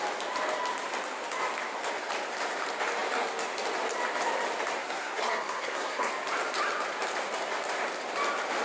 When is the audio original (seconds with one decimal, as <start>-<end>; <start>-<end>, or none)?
0.0-4.8; 6.1-8.6